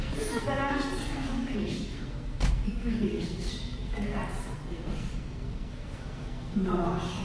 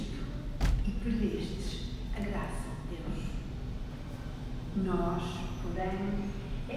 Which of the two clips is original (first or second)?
second